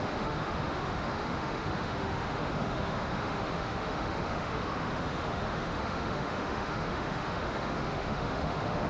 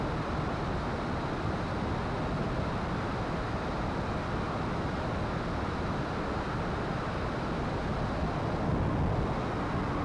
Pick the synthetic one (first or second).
first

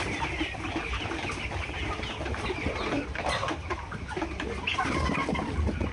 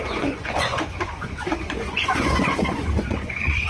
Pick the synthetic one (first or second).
second